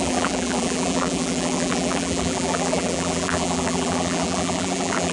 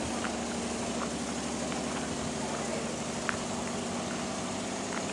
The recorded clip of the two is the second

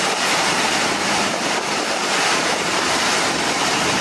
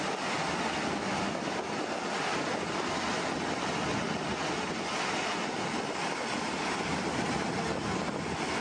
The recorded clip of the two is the second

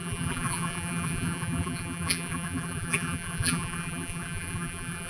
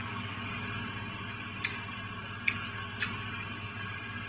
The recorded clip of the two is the second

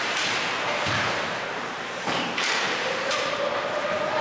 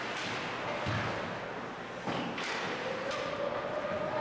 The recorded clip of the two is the second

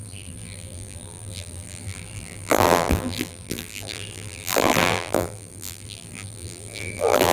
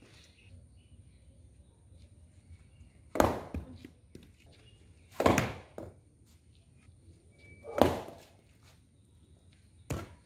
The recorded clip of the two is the second